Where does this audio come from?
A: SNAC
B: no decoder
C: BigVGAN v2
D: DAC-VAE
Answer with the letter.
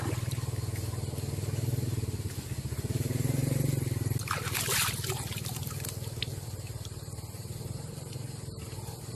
B